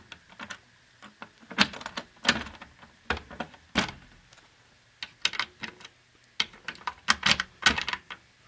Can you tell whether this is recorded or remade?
recorded